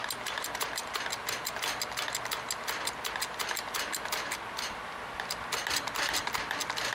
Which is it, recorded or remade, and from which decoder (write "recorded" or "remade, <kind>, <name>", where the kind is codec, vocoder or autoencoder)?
recorded